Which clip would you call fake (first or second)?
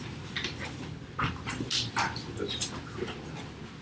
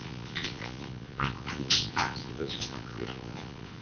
second